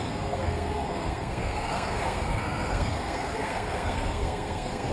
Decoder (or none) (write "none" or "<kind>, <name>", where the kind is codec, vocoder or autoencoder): codec, SNAC